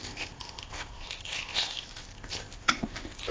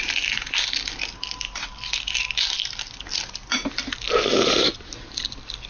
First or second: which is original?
second